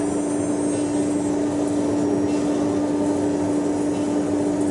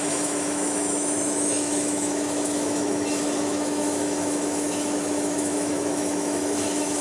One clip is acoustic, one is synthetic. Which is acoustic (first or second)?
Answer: first